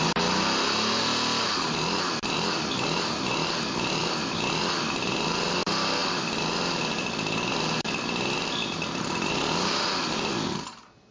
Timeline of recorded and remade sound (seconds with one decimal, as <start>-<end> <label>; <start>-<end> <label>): 0.0-11.1 recorded